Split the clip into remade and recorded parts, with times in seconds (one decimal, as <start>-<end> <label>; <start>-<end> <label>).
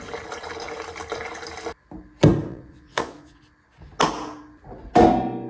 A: 0.0-2.5 recorded; 2.5-3.4 remade; 3.4-5.5 recorded